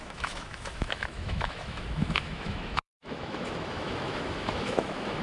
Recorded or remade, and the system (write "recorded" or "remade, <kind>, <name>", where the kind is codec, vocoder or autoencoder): remade, autoencoder, DAC-VAE